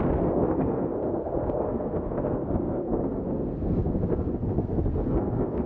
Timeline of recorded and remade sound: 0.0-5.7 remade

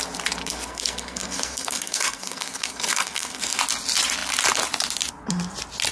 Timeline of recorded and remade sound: 0.0-0.4 recorded; 0.4-3.6 remade; 3.6-5.9 recorded

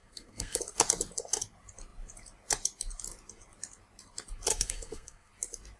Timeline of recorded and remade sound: 0.0-0.6 remade; 0.6-4.5 recorded; 4.5-5.3 remade; 5.3-5.8 recorded